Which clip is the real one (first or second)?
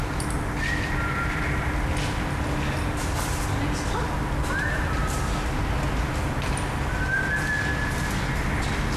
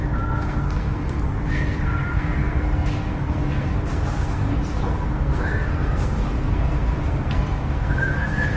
first